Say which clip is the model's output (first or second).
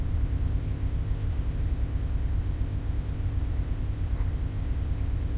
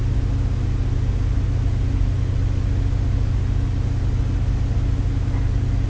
first